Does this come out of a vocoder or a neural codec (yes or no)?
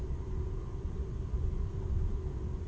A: no